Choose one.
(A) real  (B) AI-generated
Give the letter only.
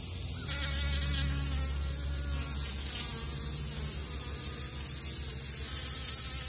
A